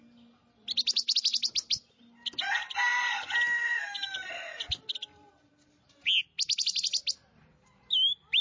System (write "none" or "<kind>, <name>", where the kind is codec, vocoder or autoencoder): none